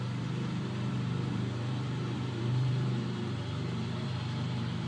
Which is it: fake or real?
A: fake